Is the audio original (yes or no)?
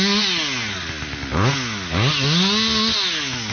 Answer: yes